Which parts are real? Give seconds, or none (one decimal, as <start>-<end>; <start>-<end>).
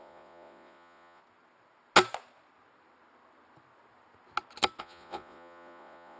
1.2-4.8